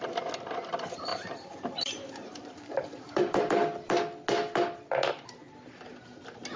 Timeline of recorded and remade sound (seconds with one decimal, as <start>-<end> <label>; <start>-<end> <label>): 0.0-1.1 recorded; 1.1-3.4 remade; 3.4-6.6 recorded